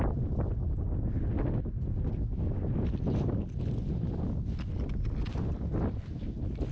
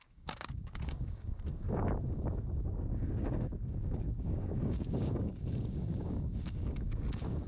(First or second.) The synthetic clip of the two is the second